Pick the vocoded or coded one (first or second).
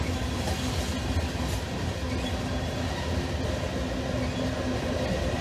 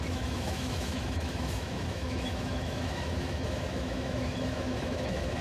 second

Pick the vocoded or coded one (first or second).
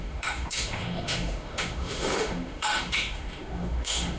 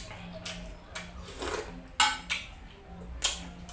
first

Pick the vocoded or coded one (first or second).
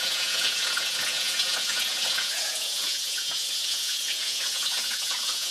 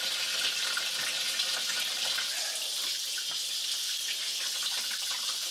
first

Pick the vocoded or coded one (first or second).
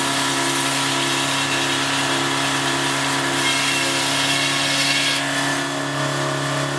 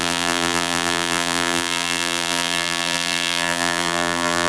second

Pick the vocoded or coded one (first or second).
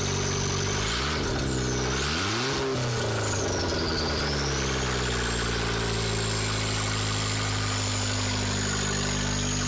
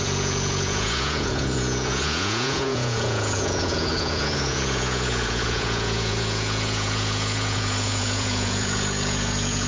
second